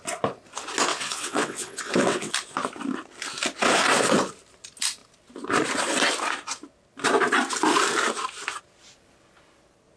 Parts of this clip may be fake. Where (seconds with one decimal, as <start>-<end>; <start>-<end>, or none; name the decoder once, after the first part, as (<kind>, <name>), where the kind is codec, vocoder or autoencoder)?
0.9-2.3 (vocoder, WaveNeXt)